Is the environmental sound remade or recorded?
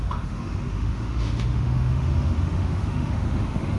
remade